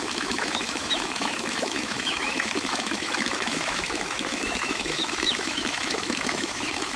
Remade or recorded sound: remade